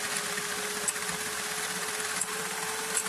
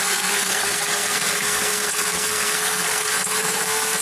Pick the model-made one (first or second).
second